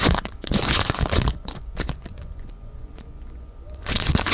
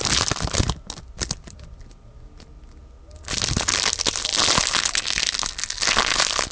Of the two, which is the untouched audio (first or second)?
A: second